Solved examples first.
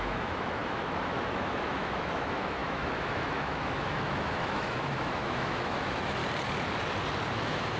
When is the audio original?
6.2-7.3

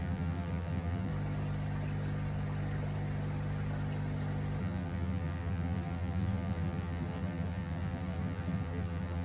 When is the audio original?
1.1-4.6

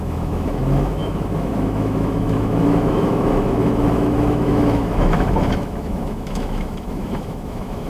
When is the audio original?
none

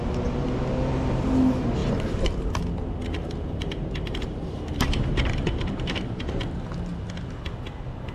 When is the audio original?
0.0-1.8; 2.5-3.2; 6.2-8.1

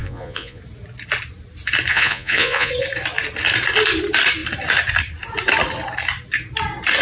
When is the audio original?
0.6-1.9; 2.7-7.0

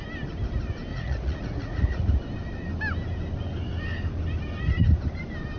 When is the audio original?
0.0-0.9; 2.1-5.6

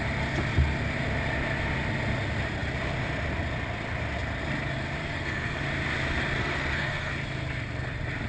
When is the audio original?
0.0-5.0; 5.6-6.4; 7.1-8.3

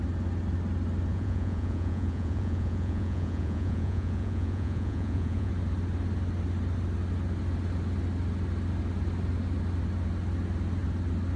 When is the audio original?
0.0-1.1; 5.5-11.4